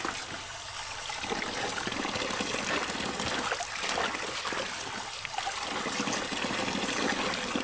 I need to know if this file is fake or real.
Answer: real